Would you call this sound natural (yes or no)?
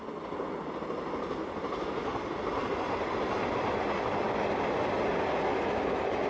yes